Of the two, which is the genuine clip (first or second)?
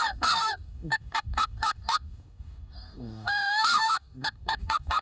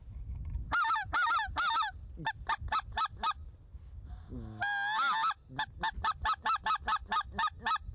second